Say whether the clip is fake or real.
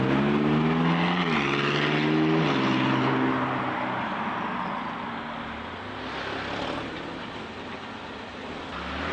real